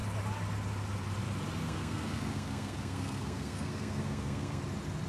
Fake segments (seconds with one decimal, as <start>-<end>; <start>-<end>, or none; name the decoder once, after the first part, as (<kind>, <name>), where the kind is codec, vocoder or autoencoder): 1.6-4.6 (codec, SNAC)